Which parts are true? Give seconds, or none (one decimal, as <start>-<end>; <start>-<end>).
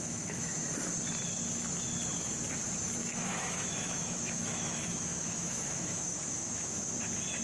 0.6-3.0; 6.9-7.4